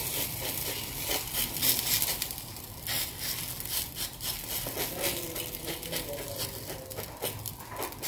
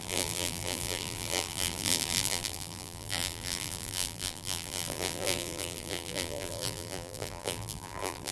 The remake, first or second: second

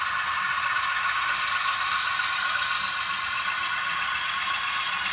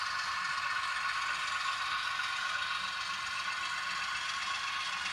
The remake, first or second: first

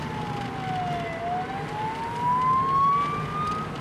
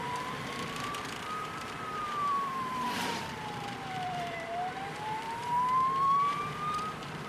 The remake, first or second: second